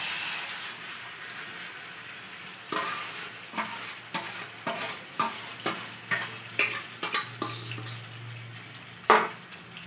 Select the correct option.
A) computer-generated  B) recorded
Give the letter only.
B